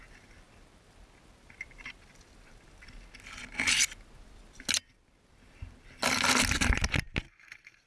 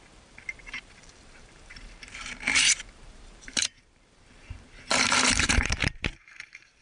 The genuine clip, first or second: first